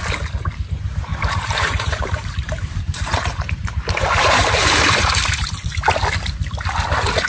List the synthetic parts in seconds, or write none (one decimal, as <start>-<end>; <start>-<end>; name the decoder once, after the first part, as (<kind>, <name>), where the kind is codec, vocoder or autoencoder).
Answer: 1.1-5.5 (vocoder, BigVGAN v2)